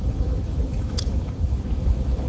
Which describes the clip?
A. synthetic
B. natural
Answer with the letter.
A